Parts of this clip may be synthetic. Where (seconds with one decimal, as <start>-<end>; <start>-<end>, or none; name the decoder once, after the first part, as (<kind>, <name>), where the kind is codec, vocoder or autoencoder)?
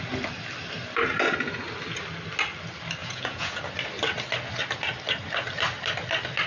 3.0-3.6 (vocoder, Vocos)